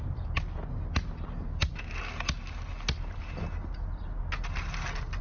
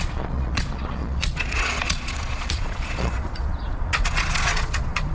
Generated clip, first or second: second